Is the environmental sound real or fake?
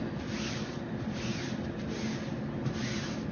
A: real